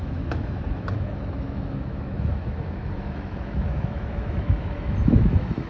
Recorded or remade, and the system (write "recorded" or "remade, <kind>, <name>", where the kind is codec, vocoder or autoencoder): remade, autoencoder, DAC-VAE